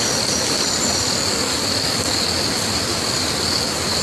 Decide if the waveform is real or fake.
real